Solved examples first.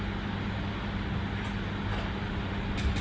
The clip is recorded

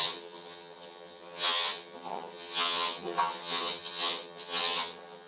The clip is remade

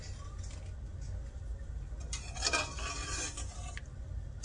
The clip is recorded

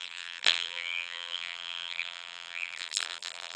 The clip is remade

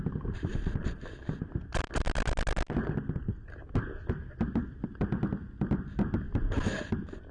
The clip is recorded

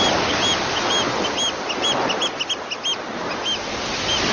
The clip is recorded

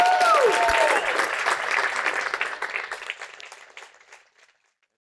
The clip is recorded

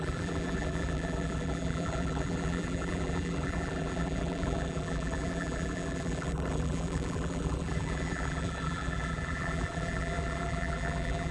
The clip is remade